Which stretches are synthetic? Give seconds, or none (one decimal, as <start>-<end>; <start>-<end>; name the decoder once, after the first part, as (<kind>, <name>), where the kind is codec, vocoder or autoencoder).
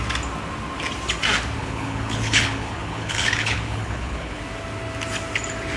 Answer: 1.6-4.4 (codec, HILCodec)